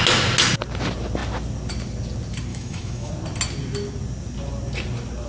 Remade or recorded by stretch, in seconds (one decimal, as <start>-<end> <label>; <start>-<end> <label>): 0.0-2.5 recorded; 2.5-3.1 remade; 3.1-5.3 recorded